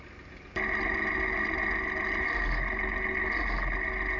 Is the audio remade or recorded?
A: recorded